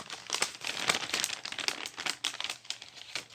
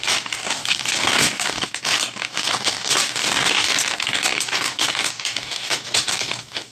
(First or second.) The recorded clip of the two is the first